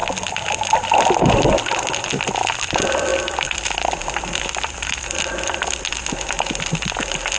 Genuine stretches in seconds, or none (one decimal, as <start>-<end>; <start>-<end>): 0.0-3.1; 6.7-7.4